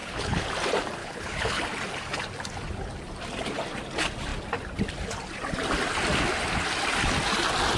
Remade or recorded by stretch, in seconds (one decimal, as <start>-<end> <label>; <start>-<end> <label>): 0.0-0.5 remade; 0.5-1.0 recorded; 1.0-1.6 remade; 1.6-7.8 recorded